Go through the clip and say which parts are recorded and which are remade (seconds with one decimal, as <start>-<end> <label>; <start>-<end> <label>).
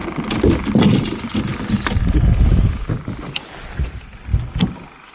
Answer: 0.0-0.6 recorded; 0.6-1.5 remade; 1.5-3.4 recorded; 3.4-4.3 remade; 4.3-5.1 recorded